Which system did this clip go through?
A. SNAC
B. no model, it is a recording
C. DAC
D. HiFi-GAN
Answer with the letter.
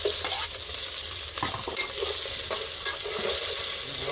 B